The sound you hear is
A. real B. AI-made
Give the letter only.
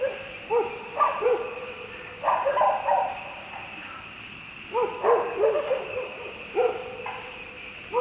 A